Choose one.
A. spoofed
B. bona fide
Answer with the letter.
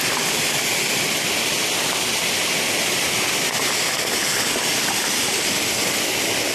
B